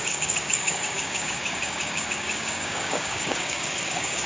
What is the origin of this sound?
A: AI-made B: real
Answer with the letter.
A